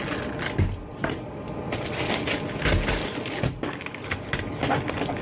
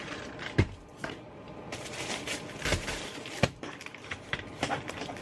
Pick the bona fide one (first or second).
first